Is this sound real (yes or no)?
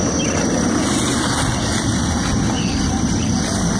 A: yes